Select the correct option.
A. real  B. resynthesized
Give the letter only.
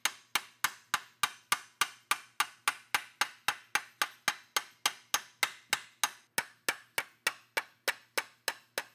A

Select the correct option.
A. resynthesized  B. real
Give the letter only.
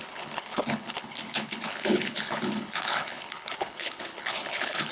A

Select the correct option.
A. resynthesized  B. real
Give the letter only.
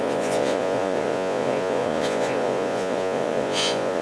A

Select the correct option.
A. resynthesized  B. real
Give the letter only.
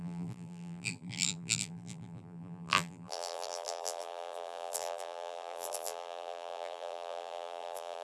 A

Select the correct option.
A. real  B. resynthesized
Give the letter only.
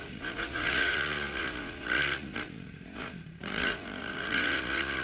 B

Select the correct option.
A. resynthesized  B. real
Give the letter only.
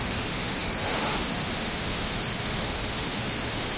A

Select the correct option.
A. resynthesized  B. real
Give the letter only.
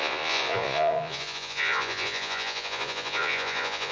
A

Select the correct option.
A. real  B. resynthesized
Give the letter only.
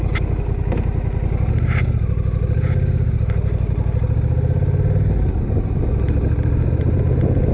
A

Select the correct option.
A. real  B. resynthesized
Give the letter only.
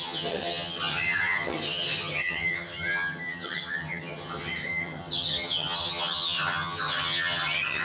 B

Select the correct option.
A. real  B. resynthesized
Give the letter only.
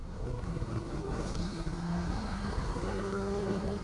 B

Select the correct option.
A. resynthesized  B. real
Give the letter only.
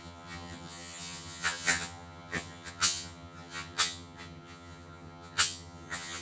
A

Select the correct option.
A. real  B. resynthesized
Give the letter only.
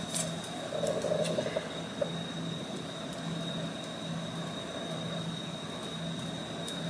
A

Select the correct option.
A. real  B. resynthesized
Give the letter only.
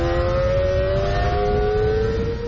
A